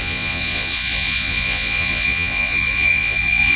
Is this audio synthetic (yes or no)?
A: yes